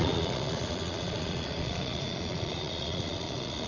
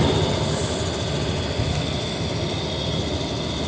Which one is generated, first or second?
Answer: first